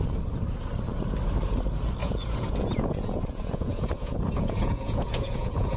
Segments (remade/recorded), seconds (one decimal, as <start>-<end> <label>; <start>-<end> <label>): 0.0-2.0 recorded; 2.0-5.8 remade